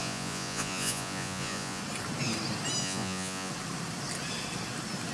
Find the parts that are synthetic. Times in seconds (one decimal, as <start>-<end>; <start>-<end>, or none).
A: 0.0-1.8; 2.8-3.5